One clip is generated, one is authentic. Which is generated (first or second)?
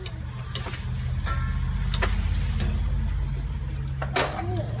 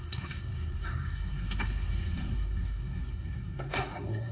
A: second